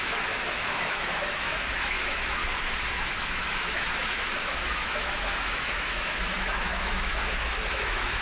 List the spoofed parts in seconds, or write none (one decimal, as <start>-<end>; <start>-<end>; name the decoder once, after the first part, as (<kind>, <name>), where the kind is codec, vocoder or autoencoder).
0.0-2.4 (autoencoder, DAC-VAE); 2.9-7.1; 7.7-8.2

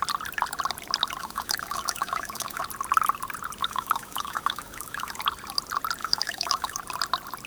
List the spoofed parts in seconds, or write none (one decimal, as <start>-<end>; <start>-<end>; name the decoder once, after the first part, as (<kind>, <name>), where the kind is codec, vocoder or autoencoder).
1.2-2.6 (autoencoder, DAC-VAE); 3.6-5.2; 6.0-6.8

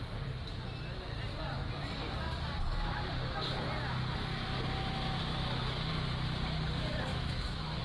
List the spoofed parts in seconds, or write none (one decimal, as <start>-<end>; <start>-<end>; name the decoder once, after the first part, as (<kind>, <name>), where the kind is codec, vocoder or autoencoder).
7.1-7.8 (autoencoder, DAC-VAE)

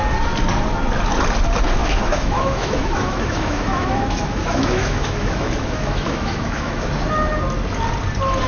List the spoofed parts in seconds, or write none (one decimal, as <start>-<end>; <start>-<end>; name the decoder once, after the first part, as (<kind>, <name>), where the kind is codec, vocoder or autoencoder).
1.8-6.9 (autoencoder, DAC-VAE)

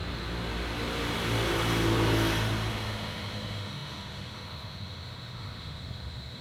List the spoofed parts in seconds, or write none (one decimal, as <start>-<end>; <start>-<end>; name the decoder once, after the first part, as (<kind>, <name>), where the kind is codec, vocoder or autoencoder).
2.7-6.4 (autoencoder, DAC-VAE)

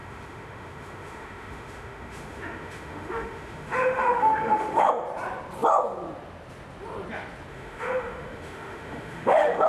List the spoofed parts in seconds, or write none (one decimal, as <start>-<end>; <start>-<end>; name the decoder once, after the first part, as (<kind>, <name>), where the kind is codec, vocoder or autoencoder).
0.0-4.9 (autoencoder, DAC-VAE); 7.5-9.7